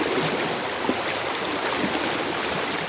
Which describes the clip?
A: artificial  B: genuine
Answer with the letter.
B